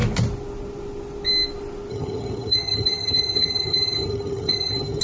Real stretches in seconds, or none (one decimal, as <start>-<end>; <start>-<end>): 0.0-1.9